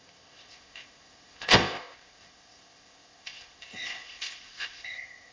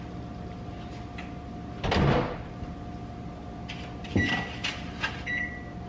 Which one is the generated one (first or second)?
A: first